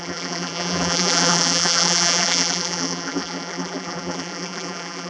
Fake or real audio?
fake